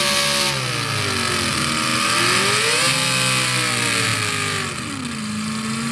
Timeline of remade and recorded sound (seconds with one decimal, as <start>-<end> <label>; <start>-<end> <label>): 0.0-5.9 recorded